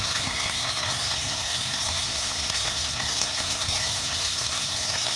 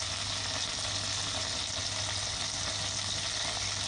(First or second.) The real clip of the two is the second